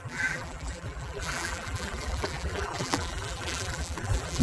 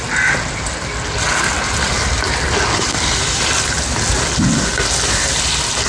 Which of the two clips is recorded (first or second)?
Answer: second